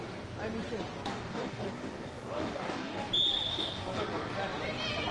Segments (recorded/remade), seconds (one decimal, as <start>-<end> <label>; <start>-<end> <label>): 0.0-1.1 recorded; 1.1-3.1 remade; 3.1-3.5 recorded; 3.5-4.0 remade; 4.0-5.1 recorded